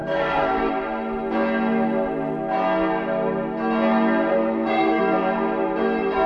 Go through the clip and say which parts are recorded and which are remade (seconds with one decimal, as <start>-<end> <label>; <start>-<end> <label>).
0.0-0.7 remade; 0.7-4.3 recorded; 4.3-5.0 remade; 5.0-6.3 recorded

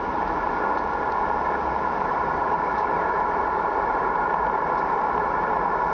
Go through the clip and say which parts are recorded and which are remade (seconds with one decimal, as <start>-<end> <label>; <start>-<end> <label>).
0.0-2.1 recorded; 2.1-5.9 remade

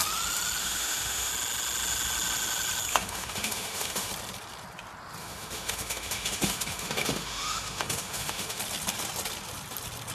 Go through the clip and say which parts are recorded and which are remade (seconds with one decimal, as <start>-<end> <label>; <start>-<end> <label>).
0.0-0.6 recorded; 0.6-1.3 remade; 1.3-2.9 recorded; 2.9-4.1 remade; 4.1-5.2 recorded; 5.2-8.6 remade; 8.6-10.1 recorded

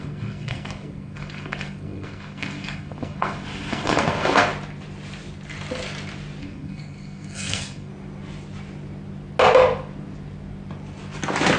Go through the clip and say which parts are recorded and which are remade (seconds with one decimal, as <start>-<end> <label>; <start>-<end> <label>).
0.0-4.5 remade; 4.5-6.4 recorded; 6.4-7.9 remade; 7.9-11.6 recorded

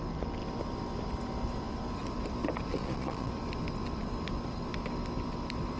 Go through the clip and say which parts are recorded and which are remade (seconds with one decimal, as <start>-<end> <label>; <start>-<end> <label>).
0.0-2.7 recorded; 2.7-3.3 remade; 3.3-5.8 recorded

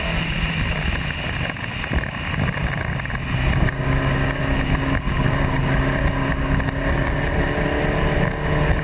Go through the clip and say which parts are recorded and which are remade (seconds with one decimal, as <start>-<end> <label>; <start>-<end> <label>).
0.0-8.8 recorded

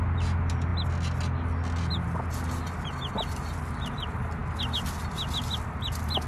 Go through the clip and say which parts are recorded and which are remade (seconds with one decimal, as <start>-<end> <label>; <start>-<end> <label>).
0.0-6.3 recorded

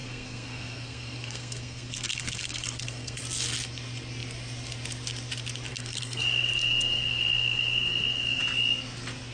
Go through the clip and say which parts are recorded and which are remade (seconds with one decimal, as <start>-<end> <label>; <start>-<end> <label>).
0.0-3.2 remade; 3.2-5.7 recorded; 5.7-8.4 remade; 8.4-9.3 recorded